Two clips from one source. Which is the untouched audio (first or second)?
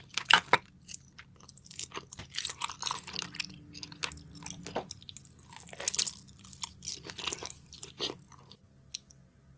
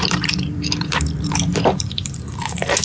first